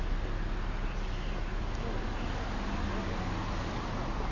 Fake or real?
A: real